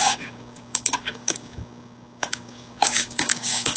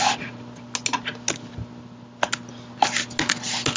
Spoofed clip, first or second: first